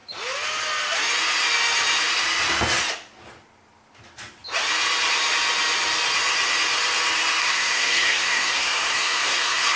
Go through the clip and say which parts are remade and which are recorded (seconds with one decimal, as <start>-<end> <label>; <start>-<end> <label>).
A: 0.0-7.4 recorded; 7.4-9.8 remade